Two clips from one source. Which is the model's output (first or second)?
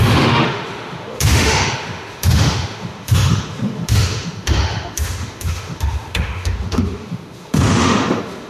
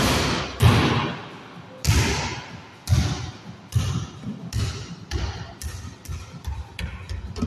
first